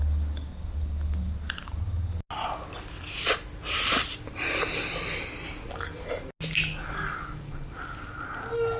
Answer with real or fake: real